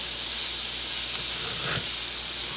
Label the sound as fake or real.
real